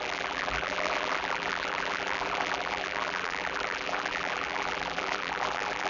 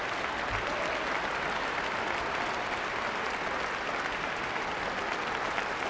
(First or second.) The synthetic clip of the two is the first